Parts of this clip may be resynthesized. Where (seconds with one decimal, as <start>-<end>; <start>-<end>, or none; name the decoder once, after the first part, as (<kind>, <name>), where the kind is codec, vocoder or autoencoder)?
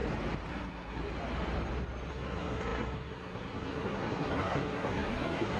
0.5-1.0 (codec, SNAC); 2.1-5.6